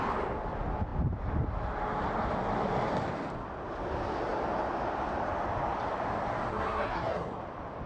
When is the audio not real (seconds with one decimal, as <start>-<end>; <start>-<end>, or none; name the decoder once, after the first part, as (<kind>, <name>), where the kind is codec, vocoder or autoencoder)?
6.5-7.4 (codec, SNAC)